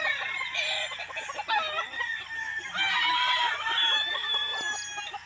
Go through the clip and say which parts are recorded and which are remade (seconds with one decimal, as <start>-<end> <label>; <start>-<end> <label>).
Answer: 0.0-5.3 recorded